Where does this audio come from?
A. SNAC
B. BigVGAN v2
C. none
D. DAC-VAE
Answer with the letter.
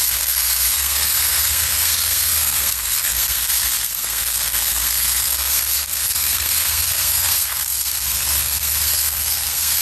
A